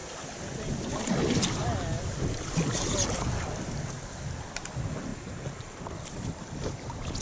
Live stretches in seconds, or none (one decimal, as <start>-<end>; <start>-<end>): 0.0-7.2